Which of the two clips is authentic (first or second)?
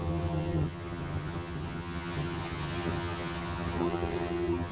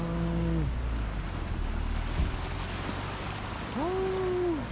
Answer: second